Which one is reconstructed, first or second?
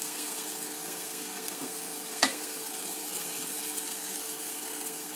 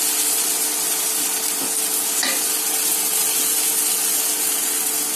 first